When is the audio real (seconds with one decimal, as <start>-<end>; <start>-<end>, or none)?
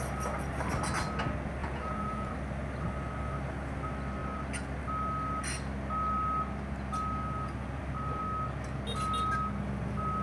0.0-1.6; 2.3-10.2